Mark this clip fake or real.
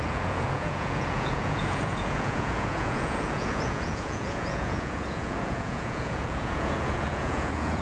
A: fake